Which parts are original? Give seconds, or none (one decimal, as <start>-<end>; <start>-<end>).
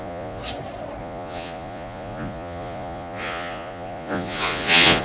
0.4-1.0